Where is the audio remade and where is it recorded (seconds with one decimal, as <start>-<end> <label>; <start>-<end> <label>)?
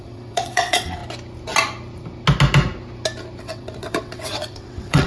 0.0-1.0 remade; 1.0-3.4 recorded; 3.4-5.1 remade